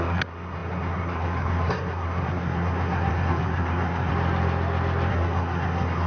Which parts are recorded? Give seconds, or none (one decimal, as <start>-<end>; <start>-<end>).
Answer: 4.1-5.1